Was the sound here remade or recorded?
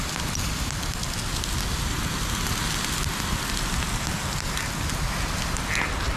recorded